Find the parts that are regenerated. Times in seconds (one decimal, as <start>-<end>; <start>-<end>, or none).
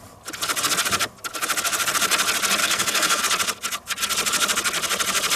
2.6-3.2